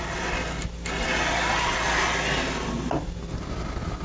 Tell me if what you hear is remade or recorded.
recorded